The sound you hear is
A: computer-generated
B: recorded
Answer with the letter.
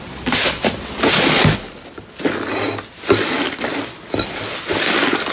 B